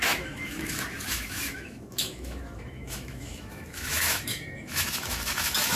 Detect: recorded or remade remade